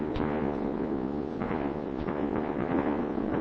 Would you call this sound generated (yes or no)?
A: yes